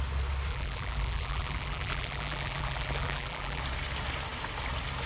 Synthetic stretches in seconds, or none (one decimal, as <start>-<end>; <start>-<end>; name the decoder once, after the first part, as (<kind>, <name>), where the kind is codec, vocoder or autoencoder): 0.5-3.6 (vocoder, BigVGAN v2)